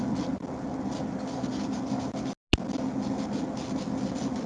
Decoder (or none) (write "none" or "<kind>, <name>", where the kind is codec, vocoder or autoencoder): none